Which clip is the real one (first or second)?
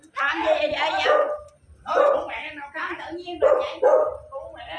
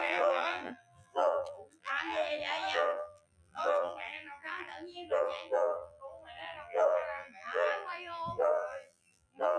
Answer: first